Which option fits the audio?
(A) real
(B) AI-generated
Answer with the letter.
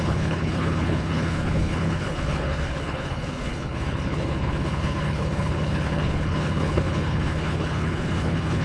B